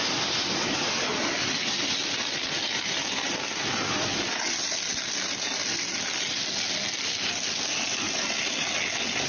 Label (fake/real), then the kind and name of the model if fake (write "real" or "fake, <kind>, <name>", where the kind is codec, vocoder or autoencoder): real